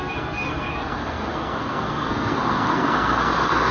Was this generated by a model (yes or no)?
yes